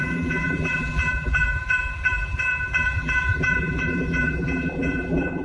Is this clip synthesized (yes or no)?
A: yes